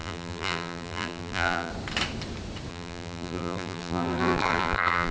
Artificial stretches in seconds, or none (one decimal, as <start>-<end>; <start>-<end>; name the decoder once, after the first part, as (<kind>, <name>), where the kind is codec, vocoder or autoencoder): 0.0-1.7 (vocoder, BigVGAN v2); 2.7-5.1